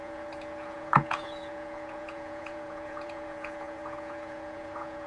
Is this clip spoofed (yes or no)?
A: yes